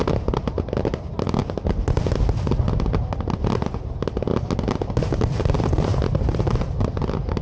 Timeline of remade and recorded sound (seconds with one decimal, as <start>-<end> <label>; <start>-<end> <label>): 0.0-7.4 recorded